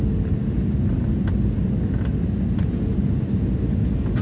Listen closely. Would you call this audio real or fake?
real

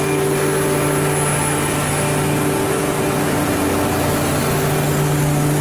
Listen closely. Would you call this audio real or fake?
real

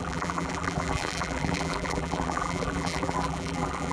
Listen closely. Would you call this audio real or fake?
fake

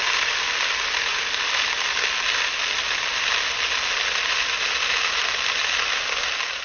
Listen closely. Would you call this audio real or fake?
real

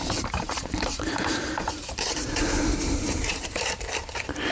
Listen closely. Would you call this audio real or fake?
fake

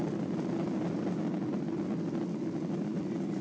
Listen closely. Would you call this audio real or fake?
real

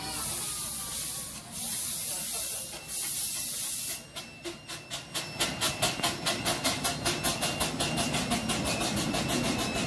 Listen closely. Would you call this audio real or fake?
real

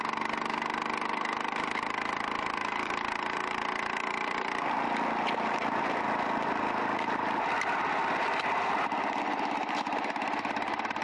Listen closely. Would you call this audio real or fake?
real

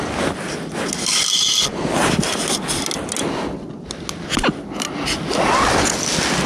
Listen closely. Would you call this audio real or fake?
real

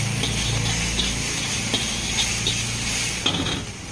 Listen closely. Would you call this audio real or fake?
real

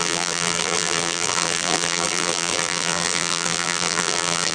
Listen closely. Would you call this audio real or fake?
fake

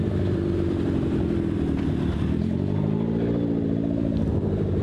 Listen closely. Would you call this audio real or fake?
fake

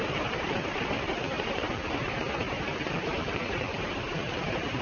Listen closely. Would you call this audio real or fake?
fake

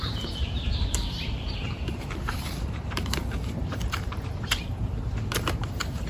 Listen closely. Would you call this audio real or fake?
fake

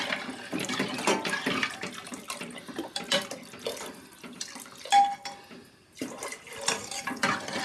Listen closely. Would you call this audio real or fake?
real